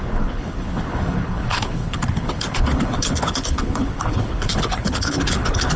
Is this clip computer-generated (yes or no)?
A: yes